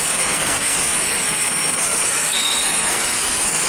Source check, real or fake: fake